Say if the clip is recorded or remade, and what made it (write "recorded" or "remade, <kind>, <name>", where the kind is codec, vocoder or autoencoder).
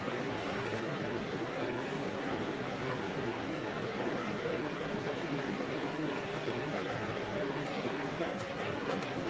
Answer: remade, codec, SNAC